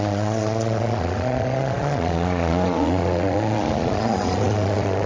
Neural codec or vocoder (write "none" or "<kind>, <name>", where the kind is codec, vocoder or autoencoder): vocoder, Vocos